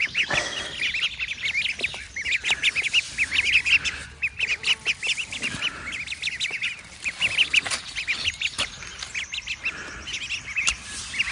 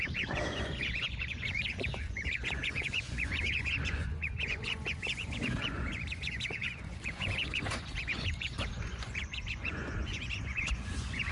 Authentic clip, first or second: first